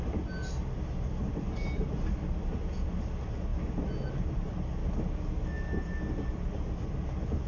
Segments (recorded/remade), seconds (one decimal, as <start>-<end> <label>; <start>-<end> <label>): 0.0-7.5 recorded

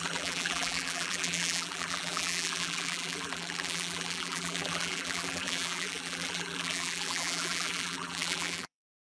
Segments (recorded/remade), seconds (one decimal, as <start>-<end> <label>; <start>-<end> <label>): 0.0-9.1 remade